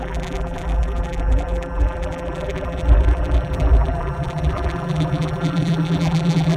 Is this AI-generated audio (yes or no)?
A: yes